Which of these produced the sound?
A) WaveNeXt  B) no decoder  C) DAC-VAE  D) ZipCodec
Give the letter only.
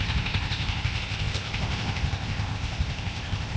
D